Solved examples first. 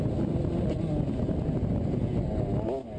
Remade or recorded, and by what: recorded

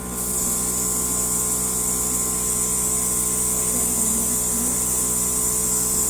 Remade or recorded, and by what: recorded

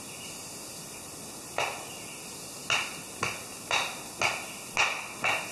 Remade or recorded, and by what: recorded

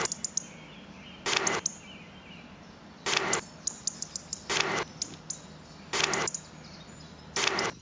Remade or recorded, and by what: recorded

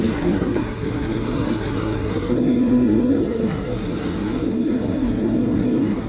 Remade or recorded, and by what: remade, codec, SNAC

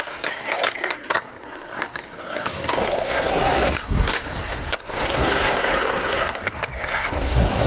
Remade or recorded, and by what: remade, codec, SNAC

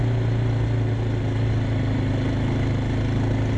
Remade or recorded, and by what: recorded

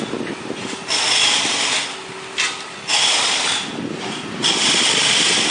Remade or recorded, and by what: recorded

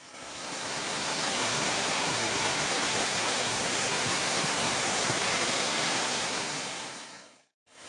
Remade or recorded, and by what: remade, codec, SNAC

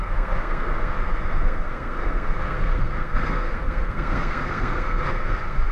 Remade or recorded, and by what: remade, codec, SNAC